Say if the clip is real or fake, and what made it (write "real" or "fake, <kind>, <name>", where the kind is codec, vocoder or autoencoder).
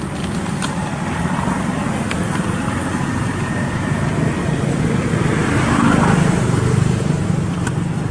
real